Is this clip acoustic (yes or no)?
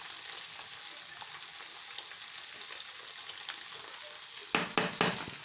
yes